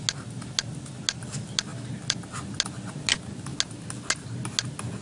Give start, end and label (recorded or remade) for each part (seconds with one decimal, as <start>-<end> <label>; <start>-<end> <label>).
0.0-5.0 recorded